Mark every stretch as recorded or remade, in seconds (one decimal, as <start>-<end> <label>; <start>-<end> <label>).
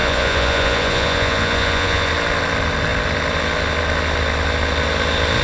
0.0-2.1 remade; 2.1-5.4 recorded